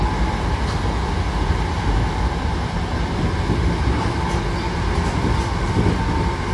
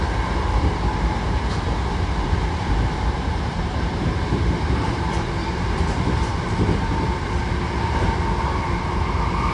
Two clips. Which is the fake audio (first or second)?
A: second